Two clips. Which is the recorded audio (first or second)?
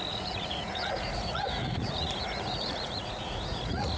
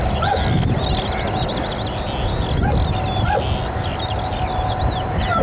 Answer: second